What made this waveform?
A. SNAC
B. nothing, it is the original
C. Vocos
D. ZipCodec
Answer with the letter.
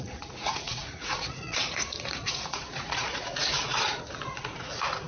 C